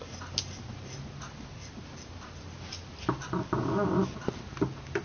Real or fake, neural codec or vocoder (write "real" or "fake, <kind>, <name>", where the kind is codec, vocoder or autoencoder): real